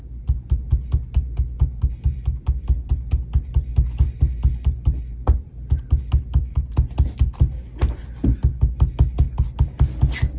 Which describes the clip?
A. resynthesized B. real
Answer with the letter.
B